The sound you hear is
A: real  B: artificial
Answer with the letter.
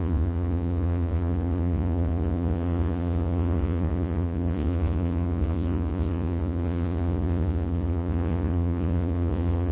B